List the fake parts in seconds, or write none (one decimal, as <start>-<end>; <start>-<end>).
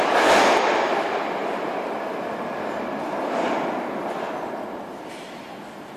none